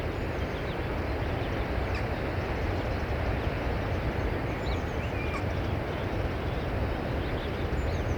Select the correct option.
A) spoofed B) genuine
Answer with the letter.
B